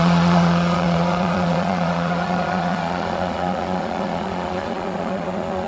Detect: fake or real fake